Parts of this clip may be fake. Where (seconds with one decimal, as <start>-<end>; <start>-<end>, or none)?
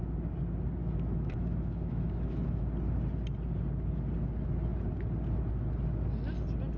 0.8-2.6